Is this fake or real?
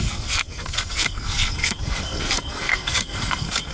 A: fake